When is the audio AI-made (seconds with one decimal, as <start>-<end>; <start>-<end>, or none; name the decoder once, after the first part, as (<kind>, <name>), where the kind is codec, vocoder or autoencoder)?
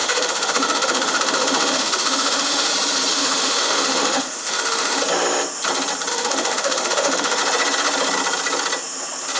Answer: 0.0-2.7 (autoencoder, DAC-VAE); 3.1-5.0; 6.1-7.4